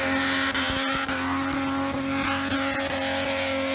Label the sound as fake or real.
real